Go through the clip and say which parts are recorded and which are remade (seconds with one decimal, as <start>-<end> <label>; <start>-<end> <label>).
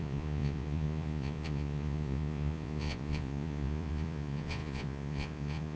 0.0-5.8 remade